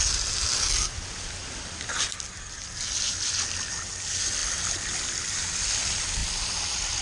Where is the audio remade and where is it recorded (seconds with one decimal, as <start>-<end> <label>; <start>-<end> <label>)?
0.0-7.0 recorded